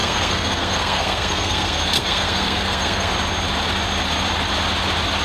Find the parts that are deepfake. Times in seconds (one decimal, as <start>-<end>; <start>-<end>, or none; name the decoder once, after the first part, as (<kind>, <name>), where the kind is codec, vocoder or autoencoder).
0.0-3.1 (codec, SNAC)